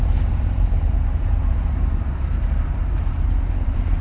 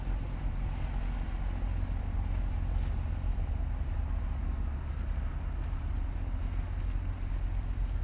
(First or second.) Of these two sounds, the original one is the second